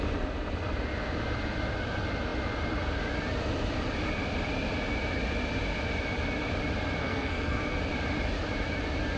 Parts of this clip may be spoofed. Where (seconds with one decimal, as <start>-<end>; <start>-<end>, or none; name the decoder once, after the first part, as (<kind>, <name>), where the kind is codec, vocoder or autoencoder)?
7.0-7.8 (codec, SNAC)